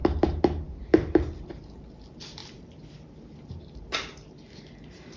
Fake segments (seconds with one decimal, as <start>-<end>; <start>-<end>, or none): none